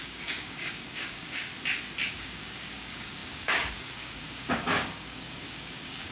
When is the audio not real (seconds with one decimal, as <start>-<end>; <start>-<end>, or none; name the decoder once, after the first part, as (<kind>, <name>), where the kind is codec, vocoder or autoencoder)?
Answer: 0.0-1.5 (codec, DAC); 2.1-6.1